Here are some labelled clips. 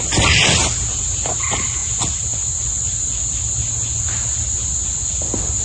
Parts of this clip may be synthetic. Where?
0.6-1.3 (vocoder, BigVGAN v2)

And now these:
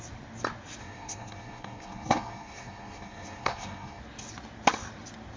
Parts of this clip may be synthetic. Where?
0.8-4.0 (codec, SNAC)

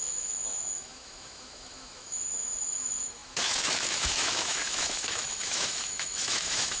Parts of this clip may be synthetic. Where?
0.0-6.8 (autoencoder, DAC-VAE)

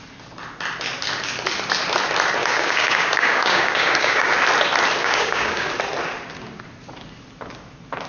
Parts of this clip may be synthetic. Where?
2.4-4.3 (codec, DAC); 5.0-5.7

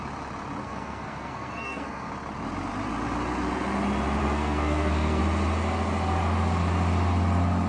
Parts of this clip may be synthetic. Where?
0.6-2.1 (codec, SNAC); 4.2-5.2

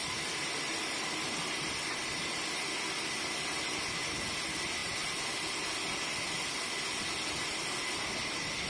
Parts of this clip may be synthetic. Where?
0.0-2.3 (vocoder, BigVGAN v2); 4.8-5.7

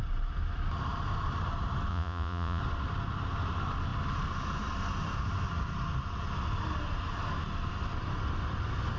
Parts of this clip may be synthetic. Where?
1.9-2.6 (vocoder, Vocos)

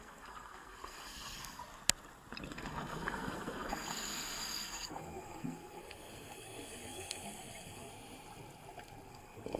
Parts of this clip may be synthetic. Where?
0.0-1.6 (codec, SNAC); 2.5-7.9; 9.1-9.6